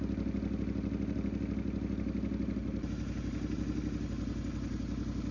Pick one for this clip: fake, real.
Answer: real